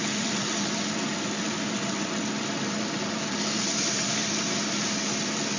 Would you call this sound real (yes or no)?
no